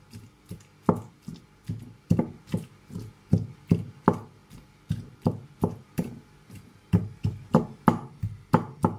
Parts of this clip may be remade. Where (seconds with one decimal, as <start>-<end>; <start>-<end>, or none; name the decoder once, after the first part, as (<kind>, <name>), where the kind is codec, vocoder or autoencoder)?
4.4-7.5 (vocoder, BigVGAN v2)